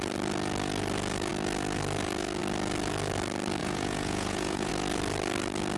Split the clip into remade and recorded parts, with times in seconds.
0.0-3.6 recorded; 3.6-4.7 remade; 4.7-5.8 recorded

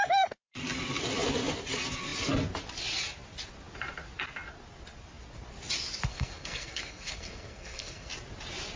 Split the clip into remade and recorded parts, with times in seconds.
0.0-6.1 recorded; 6.1-8.1 remade; 8.1-8.8 recorded

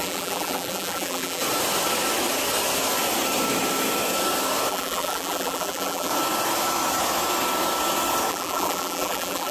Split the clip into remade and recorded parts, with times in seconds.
0.0-1.4 remade; 1.4-4.7 recorded; 4.7-6.1 remade; 6.1-8.3 recorded; 8.3-9.5 remade

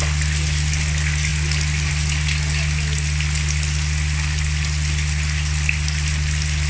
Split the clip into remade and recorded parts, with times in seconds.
0.0-6.7 recorded

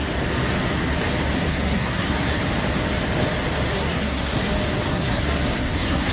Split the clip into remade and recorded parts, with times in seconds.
0.0-1.5 recorded; 1.5-2.4 remade; 2.4-3.7 recorded; 3.7-4.5 remade; 4.5-4.9 recorded; 4.9-6.1 remade